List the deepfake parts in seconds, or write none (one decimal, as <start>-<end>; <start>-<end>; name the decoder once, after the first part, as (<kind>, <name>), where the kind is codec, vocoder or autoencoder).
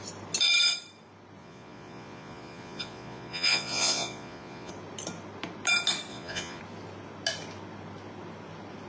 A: 1.4-4.7 (vocoder, Vocos); 6.1-6.6